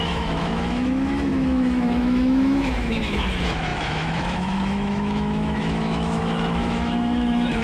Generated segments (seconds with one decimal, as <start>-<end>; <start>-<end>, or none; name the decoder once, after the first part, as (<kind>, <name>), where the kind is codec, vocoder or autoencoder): 0.0-7.6 (autoencoder, DAC-VAE)